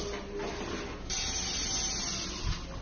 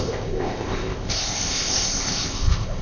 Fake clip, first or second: second